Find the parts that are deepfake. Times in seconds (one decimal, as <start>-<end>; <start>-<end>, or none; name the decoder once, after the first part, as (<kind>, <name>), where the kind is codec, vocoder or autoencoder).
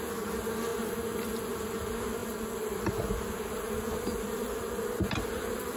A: none